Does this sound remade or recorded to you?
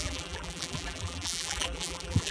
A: remade